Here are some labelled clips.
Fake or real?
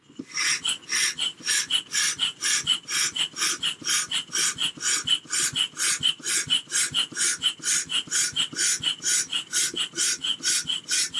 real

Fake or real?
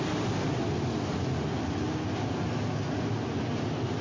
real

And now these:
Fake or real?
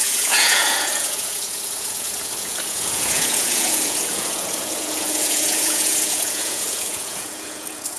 fake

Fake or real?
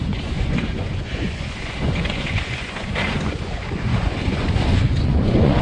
fake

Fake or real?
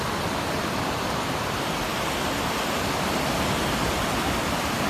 real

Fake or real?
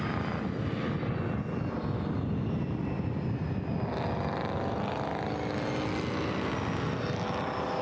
real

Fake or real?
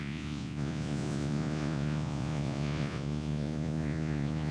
fake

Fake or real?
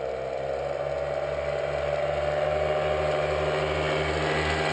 real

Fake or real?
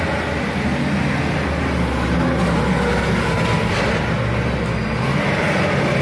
real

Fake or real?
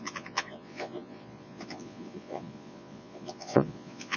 fake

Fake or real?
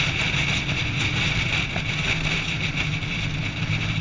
real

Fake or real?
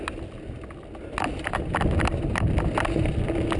real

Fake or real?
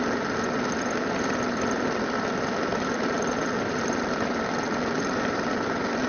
real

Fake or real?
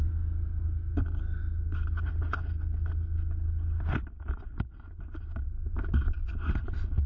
real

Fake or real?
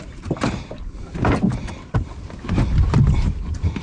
real